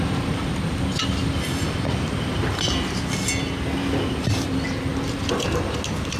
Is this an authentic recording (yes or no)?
yes